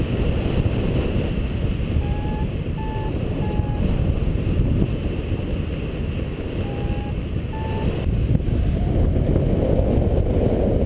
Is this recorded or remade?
recorded